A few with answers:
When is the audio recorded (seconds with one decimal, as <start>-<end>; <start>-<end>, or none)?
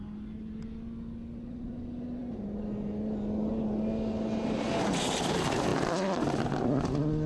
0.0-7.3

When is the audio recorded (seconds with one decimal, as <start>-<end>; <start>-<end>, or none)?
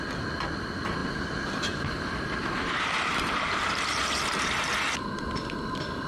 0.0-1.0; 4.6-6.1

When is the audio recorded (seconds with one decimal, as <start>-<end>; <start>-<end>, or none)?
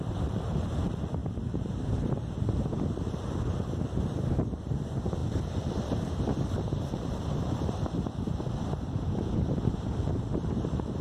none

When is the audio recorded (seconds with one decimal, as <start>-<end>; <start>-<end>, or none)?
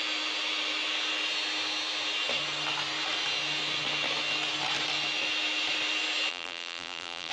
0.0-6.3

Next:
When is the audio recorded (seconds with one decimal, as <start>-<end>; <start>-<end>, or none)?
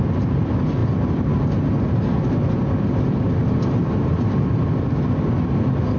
0.0-6.0